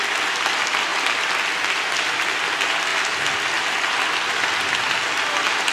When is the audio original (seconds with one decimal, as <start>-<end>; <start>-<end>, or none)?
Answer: 0.0-5.7